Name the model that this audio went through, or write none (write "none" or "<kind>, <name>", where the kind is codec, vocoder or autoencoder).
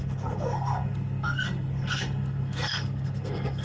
codec, SNAC